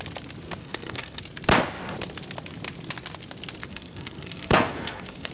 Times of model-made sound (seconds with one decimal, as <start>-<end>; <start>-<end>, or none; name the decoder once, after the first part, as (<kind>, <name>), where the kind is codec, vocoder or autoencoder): 0.6-1.2 (codec, SNAC); 3.6-5.3